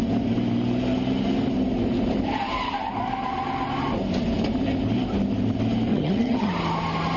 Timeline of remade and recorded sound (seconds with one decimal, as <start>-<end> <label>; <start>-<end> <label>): 0.0-5.9 recorded; 5.9-6.5 remade; 6.5-7.2 recorded